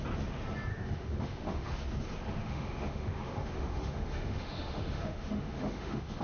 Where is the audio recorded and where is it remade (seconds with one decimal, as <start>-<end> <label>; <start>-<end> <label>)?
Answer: 0.0-0.7 recorded; 0.7-1.7 remade; 1.7-2.4 recorded; 2.4-6.2 remade